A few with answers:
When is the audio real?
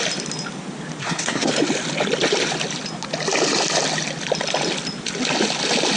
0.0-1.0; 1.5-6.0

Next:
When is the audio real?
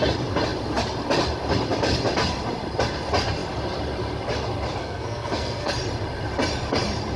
0.0-4.8; 5.7-7.2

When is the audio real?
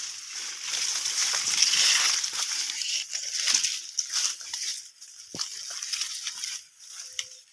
0.0-7.5